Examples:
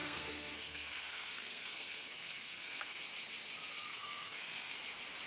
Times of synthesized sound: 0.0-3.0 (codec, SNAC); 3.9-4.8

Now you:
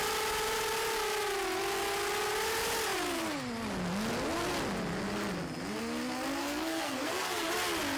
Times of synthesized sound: 6.4-7.5 (codec, SNAC)

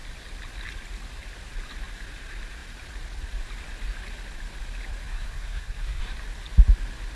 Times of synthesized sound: 5.1-6.0 (codec, SNAC)

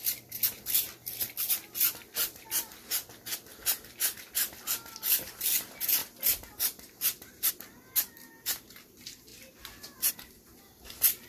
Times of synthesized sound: none

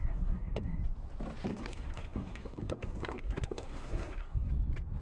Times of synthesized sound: 0.0-0.8 (codec, SNAC); 1.5-4.5

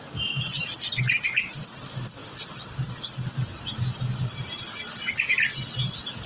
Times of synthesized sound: none

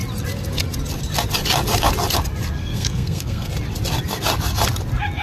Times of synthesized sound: 2.6-3.5 (codec, SNAC)

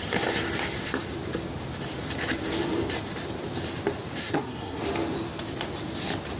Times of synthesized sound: 4.2-4.8 (codec, SNAC)